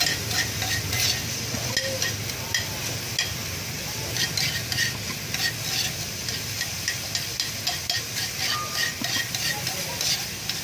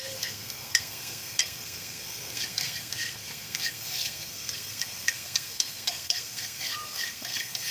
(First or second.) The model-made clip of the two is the second